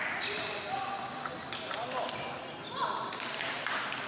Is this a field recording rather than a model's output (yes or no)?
yes